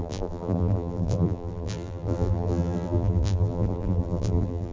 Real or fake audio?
fake